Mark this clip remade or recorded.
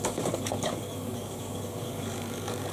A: remade